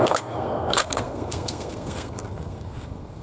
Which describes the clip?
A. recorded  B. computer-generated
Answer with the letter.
B